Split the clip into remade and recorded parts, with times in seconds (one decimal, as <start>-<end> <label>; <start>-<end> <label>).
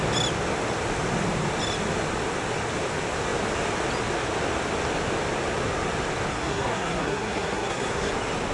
0.0-6.3 recorded; 6.3-8.1 remade; 8.1-8.5 recorded